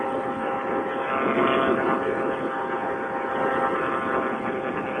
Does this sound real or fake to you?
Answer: real